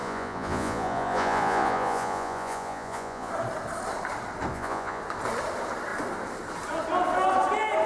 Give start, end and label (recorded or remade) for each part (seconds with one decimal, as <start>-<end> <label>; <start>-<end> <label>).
0.0-3.3 remade; 3.3-4.5 recorded; 4.5-5.0 remade; 5.0-7.9 recorded

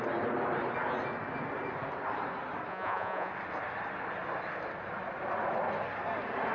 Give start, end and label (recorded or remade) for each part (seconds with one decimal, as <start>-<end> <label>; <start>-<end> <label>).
0.0-2.7 recorded; 2.7-3.3 remade; 3.3-6.5 recorded

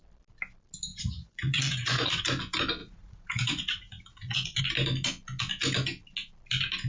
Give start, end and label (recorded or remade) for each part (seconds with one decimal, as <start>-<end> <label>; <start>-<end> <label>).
0.0-0.9 recorded; 0.9-2.2 remade; 2.2-2.8 recorded; 2.8-4.6 remade; 4.6-6.9 recorded